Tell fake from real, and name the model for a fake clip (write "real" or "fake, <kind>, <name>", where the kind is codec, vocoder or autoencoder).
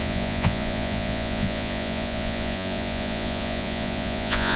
fake, vocoder, Vocos